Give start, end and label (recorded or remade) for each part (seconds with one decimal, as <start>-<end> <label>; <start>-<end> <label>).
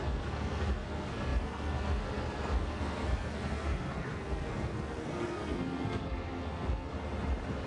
0.0-6.9 remade; 6.9-7.7 recorded